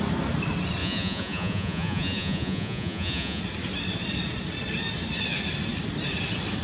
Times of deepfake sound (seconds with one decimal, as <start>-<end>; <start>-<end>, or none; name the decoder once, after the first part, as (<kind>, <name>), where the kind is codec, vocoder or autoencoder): 0.8-3.4 (vocoder, Vocos)